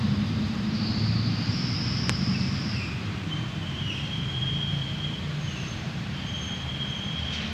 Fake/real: fake